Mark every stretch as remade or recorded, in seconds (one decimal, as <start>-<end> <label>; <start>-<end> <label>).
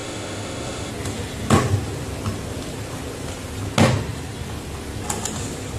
0.0-0.9 remade; 0.9-5.8 recorded